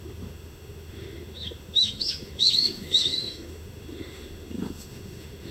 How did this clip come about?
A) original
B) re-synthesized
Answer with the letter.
B